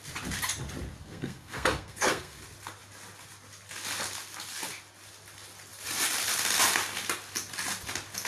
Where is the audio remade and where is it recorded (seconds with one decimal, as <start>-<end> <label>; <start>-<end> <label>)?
0.0-1.0 recorded; 1.0-2.4 remade; 2.4-8.3 recorded